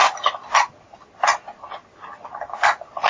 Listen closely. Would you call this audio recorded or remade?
recorded